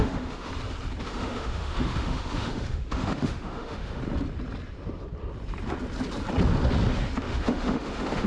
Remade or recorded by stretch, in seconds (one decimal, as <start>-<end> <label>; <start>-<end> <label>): 0.0-0.5 remade; 0.5-1.0 recorded; 1.0-4.0 remade; 4.0-7.2 recorded; 7.2-8.3 remade